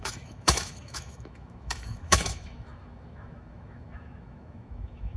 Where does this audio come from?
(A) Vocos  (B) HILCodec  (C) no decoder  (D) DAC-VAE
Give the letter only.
D